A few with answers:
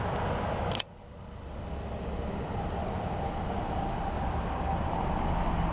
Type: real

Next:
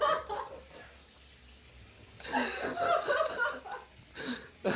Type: real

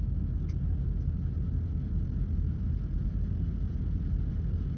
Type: real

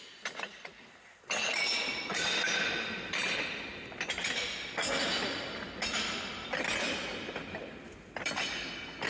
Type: real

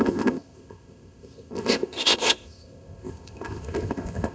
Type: fake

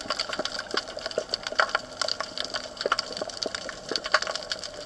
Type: real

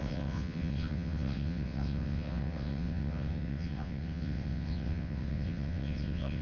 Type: fake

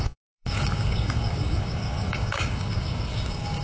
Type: fake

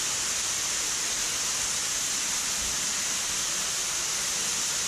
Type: real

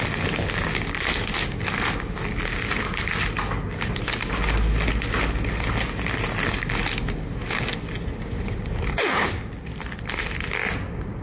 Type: real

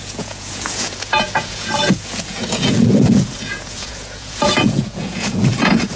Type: fake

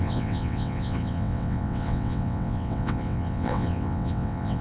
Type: fake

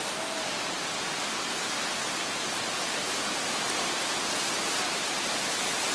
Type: real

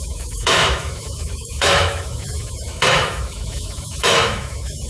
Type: fake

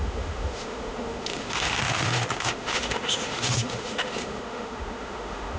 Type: fake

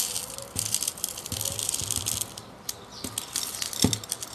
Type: real